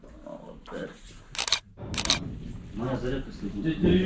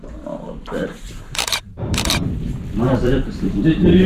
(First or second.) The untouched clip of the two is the first